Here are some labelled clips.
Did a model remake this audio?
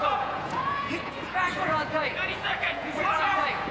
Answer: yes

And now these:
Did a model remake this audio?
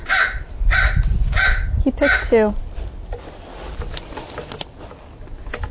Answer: no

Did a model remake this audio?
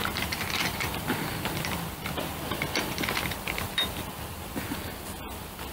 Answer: yes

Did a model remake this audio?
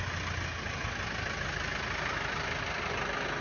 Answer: no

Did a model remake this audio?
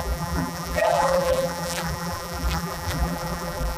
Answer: yes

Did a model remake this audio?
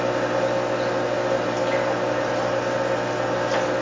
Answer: no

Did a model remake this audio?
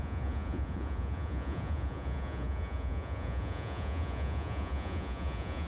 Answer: yes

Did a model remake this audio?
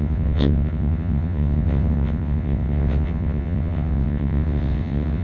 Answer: yes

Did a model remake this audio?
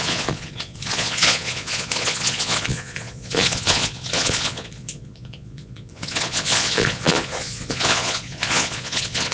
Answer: yes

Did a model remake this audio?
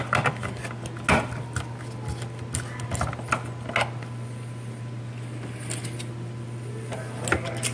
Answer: no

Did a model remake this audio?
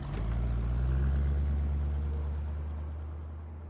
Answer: no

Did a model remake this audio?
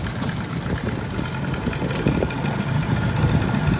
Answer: no